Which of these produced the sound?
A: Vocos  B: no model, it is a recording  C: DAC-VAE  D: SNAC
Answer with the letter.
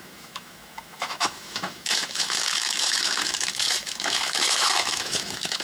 C